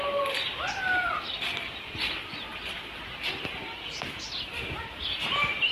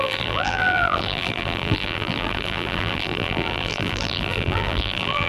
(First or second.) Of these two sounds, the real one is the first